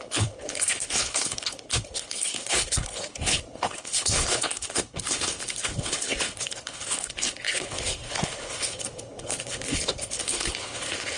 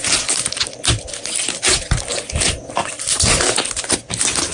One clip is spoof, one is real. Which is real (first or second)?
second